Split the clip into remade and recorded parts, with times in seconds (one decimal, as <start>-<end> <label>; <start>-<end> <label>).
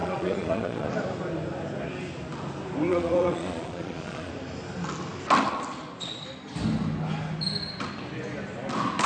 0.0-0.9 remade; 0.9-2.9 recorded; 2.9-4.3 remade; 4.3-9.1 recorded